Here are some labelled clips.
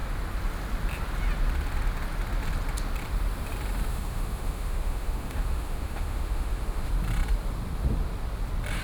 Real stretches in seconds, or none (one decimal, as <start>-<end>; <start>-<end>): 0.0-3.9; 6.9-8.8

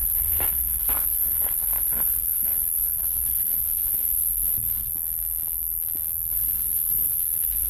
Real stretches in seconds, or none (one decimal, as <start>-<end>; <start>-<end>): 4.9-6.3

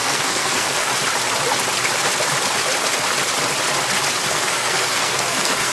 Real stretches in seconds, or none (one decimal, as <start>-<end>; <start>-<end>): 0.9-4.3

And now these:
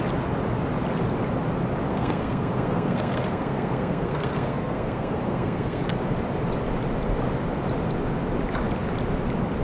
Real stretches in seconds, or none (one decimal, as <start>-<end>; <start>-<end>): 0.0-1.9; 5.8-9.6